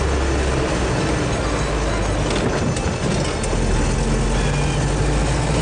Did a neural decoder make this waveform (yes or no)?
no